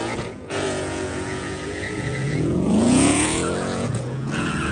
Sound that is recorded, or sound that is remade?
remade